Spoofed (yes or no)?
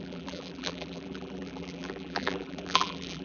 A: yes